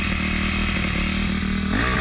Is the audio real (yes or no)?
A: yes